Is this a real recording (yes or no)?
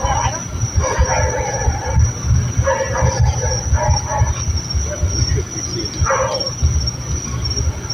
yes